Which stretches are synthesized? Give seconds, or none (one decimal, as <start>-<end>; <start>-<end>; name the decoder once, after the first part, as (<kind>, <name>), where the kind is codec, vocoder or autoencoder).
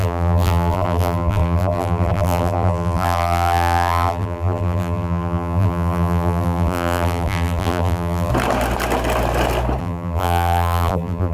0.0-8.3 (vocoder, BigVGAN v2); 9.8-11.3